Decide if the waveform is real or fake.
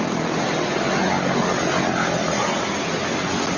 real